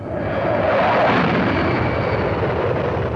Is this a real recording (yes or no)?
yes